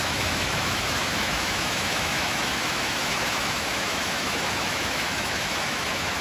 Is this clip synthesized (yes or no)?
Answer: yes